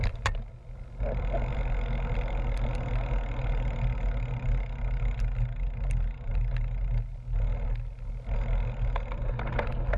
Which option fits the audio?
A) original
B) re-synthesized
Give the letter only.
A